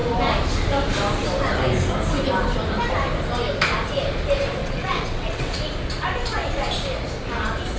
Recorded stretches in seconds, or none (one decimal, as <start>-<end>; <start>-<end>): 0.0-4.6; 5.6-7.8